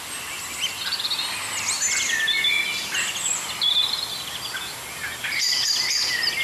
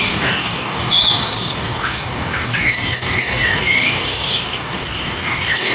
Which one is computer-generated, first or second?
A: second